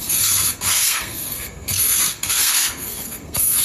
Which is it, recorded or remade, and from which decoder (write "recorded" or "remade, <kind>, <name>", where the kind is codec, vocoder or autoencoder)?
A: remade, codec, SNAC